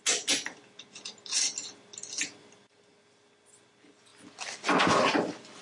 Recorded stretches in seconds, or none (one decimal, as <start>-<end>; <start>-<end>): 0.0-5.6